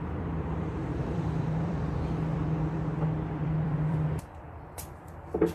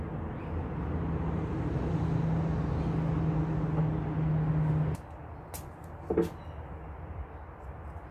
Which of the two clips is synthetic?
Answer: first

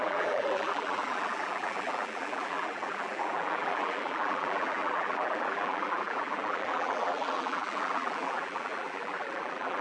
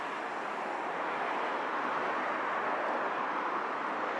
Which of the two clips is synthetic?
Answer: first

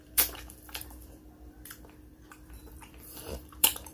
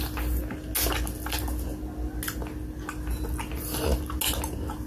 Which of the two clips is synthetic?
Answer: first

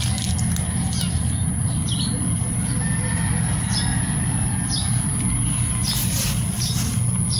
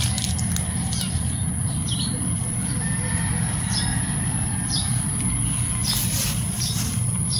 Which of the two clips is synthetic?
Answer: second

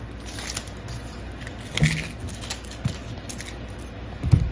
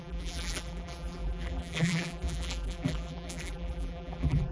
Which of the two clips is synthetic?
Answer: second